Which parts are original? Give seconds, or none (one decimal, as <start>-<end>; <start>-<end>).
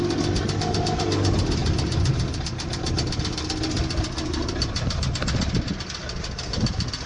0.0-7.1